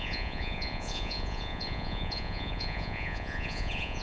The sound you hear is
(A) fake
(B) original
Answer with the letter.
A